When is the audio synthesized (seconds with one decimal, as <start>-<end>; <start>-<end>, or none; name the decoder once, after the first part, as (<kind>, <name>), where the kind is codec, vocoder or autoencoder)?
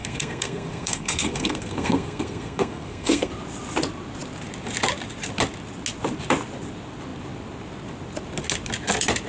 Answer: 0.0-3.3 (codec, SNAC)